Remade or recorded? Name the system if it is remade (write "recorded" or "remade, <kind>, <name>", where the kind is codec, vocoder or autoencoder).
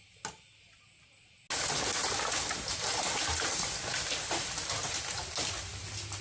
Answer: recorded